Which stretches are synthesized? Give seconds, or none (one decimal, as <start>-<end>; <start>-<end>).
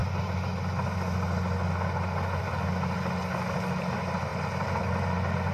2.5-4.3; 4.8-5.5